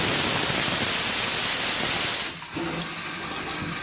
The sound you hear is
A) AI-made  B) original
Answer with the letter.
B